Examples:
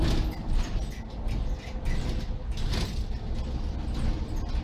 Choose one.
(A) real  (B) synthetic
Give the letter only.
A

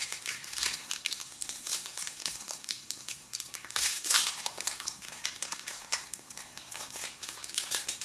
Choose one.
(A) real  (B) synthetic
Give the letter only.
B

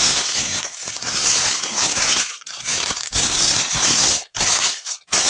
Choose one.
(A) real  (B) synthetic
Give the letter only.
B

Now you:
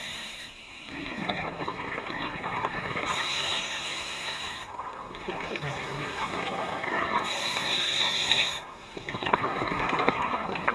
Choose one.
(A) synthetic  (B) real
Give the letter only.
A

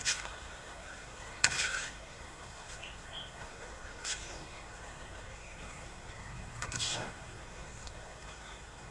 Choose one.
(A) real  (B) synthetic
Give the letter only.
B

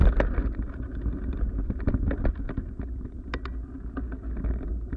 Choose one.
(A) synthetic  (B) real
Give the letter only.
B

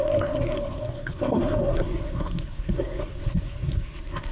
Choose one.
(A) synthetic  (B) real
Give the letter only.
A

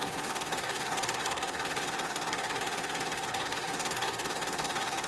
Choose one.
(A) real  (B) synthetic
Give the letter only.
B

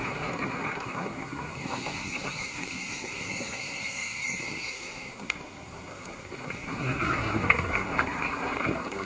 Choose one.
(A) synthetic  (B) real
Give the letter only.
A